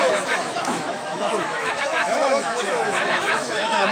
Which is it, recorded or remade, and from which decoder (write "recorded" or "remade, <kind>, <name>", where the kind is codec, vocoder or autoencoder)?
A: remade, autoencoder, DAC-VAE